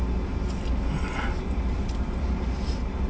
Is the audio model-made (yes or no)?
no